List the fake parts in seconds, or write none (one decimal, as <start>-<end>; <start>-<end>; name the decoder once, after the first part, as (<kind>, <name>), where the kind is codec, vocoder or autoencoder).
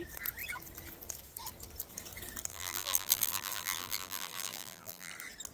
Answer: 2.5-5.1 (vocoder, BigVGAN v2)